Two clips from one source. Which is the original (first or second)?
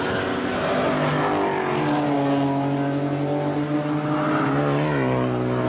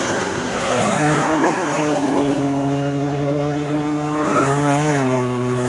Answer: first